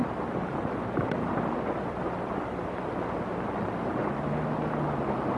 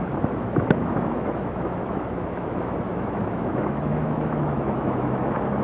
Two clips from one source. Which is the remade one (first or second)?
second